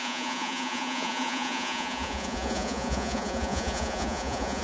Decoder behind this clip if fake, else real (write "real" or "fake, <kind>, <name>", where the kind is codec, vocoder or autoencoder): fake, vocoder, Vocos